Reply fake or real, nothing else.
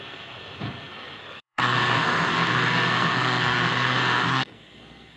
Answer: fake